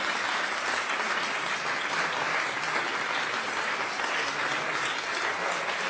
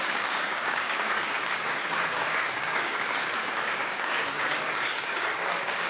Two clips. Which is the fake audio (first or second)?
second